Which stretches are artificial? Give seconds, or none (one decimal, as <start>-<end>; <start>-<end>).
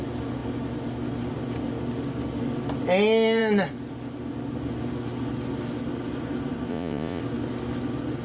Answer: 6.7-7.2